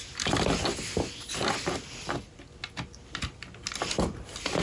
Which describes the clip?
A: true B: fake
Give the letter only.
A